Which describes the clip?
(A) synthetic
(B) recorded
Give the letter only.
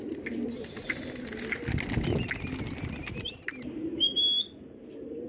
B